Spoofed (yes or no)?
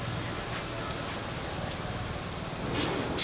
no